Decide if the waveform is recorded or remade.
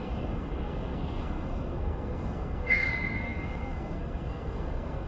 remade